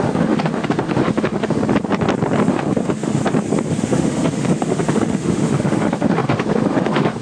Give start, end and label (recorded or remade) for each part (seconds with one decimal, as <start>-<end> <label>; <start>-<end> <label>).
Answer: 0.0-1.6 remade; 1.6-2.5 recorded; 2.5-3.2 remade; 3.2-3.7 recorded; 3.7-7.2 remade